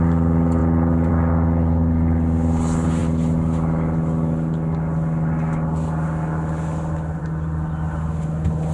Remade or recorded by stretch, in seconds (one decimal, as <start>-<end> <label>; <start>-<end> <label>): 0.0-8.7 recorded